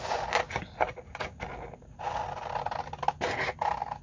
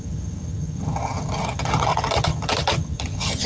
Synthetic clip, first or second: second